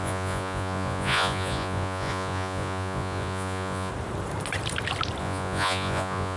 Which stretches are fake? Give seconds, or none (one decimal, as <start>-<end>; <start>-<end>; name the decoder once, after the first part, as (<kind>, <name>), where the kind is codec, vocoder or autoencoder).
0.0-3.9 (vocoder, Vocos); 5.2-6.4